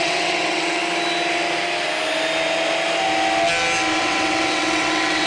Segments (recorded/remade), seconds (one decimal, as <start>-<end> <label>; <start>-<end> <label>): 0.0-0.8 remade; 0.8-4.0 recorded; 4.0-5.3 remade